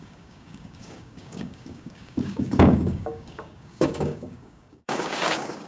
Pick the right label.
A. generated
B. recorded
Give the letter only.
A